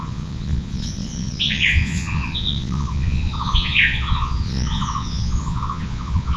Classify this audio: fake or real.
fake